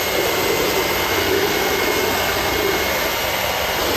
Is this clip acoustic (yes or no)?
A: yes